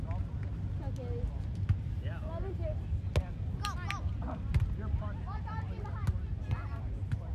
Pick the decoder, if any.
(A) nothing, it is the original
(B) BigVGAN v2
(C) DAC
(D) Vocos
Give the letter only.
A